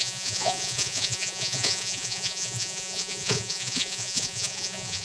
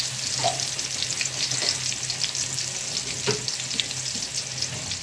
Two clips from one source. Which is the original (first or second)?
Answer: second